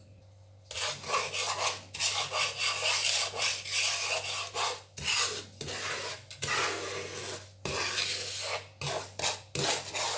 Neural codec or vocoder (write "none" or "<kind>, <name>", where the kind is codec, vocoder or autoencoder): none